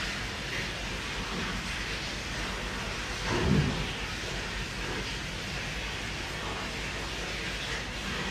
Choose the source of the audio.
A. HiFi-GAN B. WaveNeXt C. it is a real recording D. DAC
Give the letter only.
C